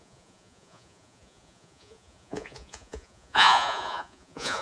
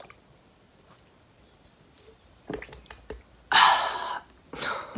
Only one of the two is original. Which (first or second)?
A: second